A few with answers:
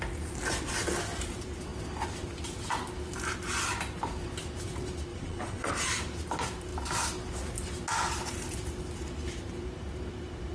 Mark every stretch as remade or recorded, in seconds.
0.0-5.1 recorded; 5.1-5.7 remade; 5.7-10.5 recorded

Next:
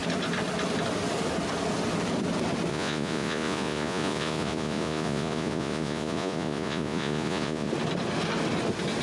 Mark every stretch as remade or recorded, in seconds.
0.0-2.7 recorded; 2.7-7.7 remade; 7.7-9.0 recorded

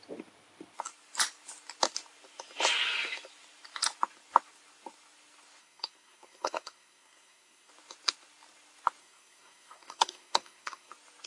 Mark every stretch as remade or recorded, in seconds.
0.0-5.6 recorded; 5.6-7.7 remade; 7.7-9.0 recorded; 9.0-10.9 remade; 10.9-11.3 recorded